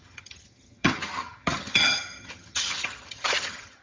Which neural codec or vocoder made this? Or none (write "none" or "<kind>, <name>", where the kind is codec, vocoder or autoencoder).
vocoder, HiFi-GAN